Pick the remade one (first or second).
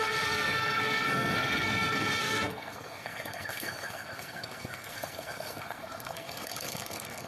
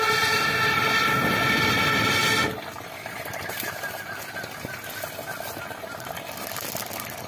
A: first